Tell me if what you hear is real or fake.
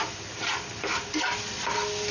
real